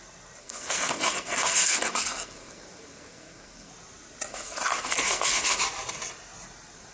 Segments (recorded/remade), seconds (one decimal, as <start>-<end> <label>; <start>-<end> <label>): 0.0-0.4 recorded; 0.4-3.7 remade; 3.7-4.3 recorded; 4.3-5.6 remade; 5.6-6.9 recorded